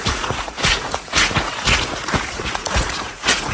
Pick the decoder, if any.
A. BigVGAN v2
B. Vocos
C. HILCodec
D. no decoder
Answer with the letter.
B